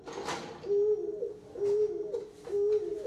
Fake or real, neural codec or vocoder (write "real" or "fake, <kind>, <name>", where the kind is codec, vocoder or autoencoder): real